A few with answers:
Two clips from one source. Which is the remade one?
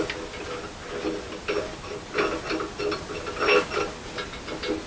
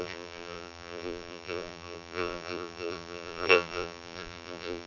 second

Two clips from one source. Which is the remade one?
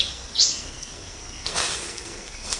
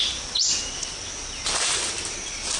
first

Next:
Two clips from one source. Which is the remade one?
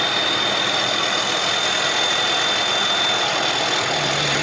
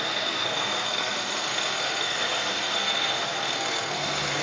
second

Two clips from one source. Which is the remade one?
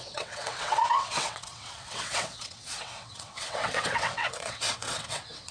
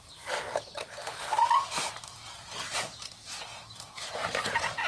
first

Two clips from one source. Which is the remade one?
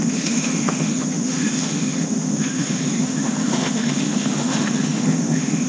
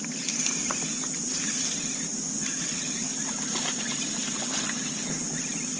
first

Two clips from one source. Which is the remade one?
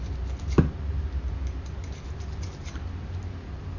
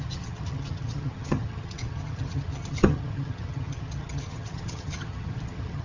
second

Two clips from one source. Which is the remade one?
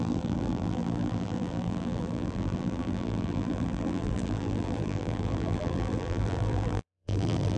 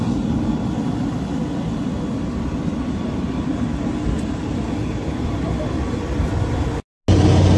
first